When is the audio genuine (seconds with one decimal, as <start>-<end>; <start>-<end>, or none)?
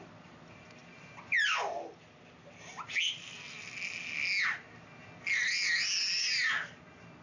0.0-7.2